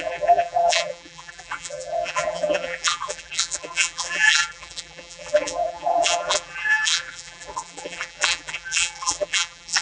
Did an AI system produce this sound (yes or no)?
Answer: yes